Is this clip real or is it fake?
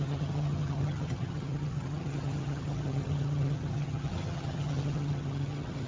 fake